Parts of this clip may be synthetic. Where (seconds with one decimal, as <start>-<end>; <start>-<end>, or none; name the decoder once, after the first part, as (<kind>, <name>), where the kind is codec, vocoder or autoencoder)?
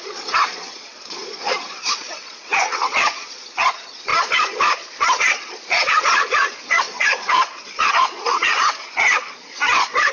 0.0-10.1 (vocoder, Vocos)